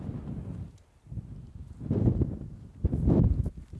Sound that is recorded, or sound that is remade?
recorded